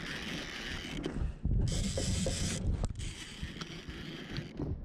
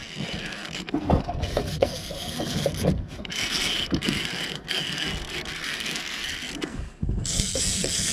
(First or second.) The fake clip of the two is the second